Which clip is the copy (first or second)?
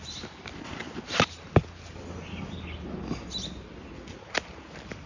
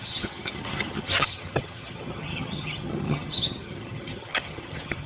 second